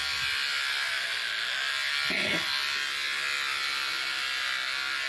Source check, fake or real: real